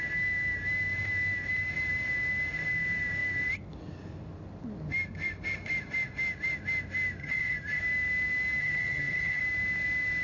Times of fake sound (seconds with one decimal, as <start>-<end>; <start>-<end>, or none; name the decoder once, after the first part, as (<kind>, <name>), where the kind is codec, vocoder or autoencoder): 7.2-7.8 (vocoder, HiFi-GAN); 8.6-9.4